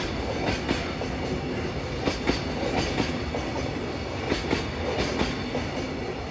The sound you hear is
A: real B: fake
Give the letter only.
A